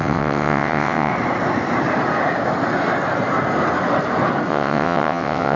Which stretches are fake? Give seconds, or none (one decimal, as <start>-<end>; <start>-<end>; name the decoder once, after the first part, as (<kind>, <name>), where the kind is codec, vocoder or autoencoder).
0.0-1.1 (vocoder, WaveNeXt); 4.5-5.6